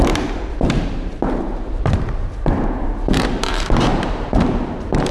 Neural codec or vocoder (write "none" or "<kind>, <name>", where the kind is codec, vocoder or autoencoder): vocoder, BigVGAN v2